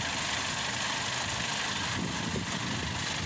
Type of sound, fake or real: real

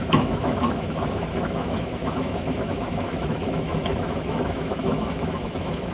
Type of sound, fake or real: fake